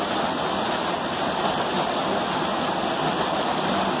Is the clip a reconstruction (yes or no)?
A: no